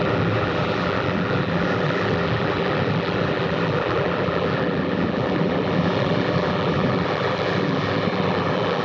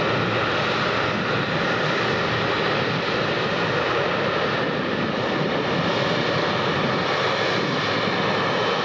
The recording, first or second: second